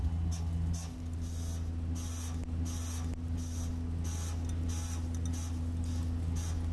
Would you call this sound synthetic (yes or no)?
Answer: no